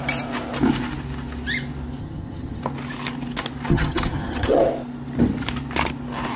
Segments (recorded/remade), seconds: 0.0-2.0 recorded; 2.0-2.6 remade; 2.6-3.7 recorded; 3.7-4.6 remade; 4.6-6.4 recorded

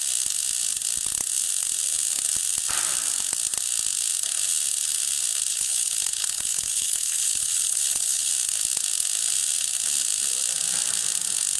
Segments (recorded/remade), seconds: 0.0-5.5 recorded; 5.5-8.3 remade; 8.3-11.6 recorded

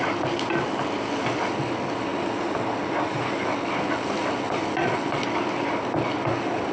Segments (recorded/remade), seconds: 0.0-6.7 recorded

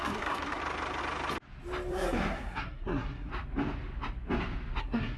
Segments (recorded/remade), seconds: 0.0-0.6 remade; 0.6-1.9 recorded; 1.9-3.3 remade; 3.3-4.8 recorded; 4.8-5.2 remade

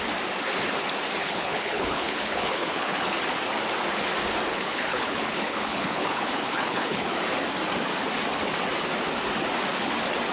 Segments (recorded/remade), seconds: 0.0-1.2 recorded; 1.2-3.2 remade; 3.2-4.5 recorded; 4.5-7.1 remade; 7.1-10.3 recorded